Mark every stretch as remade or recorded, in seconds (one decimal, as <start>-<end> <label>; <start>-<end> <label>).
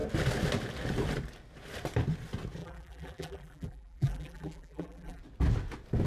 0.0-2.6 recorded; 2.6-5.2 remade; 5.2-6.1 recorded